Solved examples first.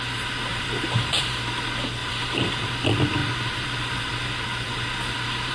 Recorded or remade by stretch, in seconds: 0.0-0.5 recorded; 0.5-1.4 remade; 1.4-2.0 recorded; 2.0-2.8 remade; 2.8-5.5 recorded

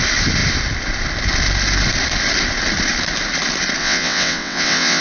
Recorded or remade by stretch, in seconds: 0.0-3.8 recorded; 3.8-5.0 remade

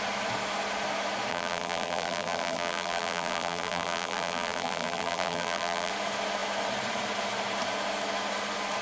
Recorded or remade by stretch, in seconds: 0.0-1.3 recorded; 1.3-5.9 remade; 5.9-8.8 recorded

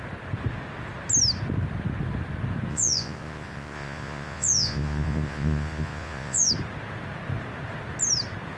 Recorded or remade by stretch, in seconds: 0.0-2.7 recorded; 2.7-6.5 remade; 6.5-8.6 recorded